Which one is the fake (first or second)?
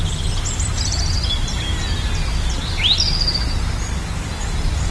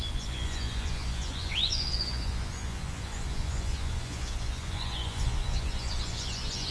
second